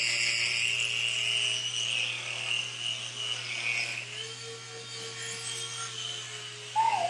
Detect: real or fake real